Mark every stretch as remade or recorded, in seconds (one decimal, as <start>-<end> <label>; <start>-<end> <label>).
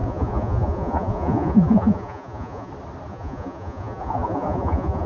0.0-2.7 remade; 2.7-3.1 recorded; 3.1-5.1 remade